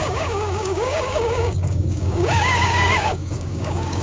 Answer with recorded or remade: remade